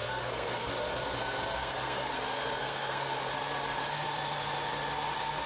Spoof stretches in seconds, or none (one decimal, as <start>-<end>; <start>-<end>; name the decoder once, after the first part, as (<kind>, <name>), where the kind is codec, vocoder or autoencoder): 0.0-0.7 (codec, SNAC); 1.6-2.2; 2.6-3.3